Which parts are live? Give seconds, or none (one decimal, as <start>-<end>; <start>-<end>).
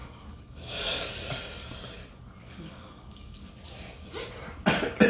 1.1-2.4; 3.5-5.1